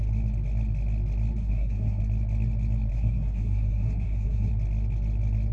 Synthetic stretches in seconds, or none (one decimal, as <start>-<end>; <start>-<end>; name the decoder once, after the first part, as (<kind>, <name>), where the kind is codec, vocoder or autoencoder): 1.4-2.0 (codec, SNAC); 2.9-4.5